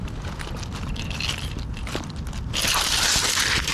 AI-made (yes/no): no